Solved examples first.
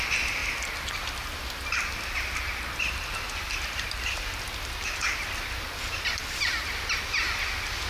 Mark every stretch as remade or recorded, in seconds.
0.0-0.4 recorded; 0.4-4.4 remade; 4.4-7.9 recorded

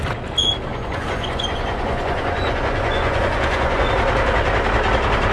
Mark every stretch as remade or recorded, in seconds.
0.0-0.7 recorded; 0.7-3.9 remade; 3.9-5.3 recorded

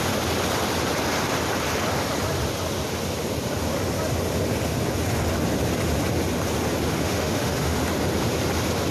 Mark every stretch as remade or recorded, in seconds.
0.0-6.9 recorded; 6.9-7.8 remade; 7.8-8.9 recorded

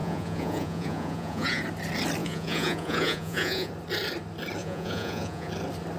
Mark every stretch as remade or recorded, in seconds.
0.0-1.6 remade; 1.6-2.2 recorded; 2.2-3.7 remade; 3.7-4.6 recorded; 4.6-5.5 remade; 5.5-6.0 recorded

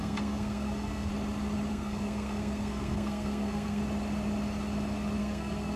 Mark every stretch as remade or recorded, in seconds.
0.0-1.1 remade; 1.1-1.7 recorded; 1.7-3.8 remade; 3.8-5.2 recorded; 5.2-5.8 remade

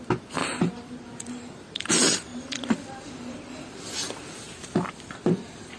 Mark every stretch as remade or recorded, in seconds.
0.0-0.4 recorded; 0.4-1.9 remade; 1.9-2.3 recorded; 2.3-5.8 remade